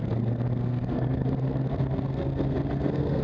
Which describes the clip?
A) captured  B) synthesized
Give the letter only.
B